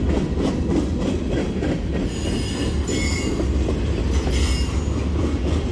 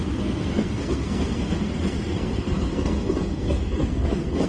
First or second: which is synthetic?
second